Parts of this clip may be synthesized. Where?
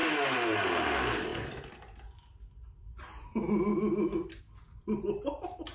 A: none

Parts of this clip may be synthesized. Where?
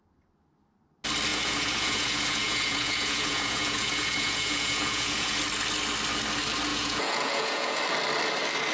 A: 1.3-5.4 (vocoder, Vocos); 6.7-7.8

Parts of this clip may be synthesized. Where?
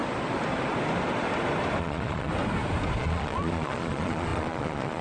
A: 1.8-2.3 (vocoder, Vocos); 3.0-5.0